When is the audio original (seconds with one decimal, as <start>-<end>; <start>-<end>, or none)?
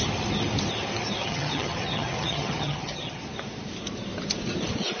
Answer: 0.0-1.2; 3.1-5.0